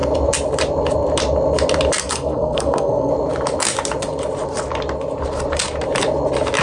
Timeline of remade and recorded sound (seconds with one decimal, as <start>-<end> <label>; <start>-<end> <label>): 0.0-2.0 recorded; 2.0-3.1 remade; 3.1-6.6 recorded